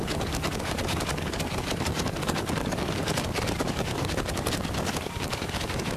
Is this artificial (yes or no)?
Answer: yes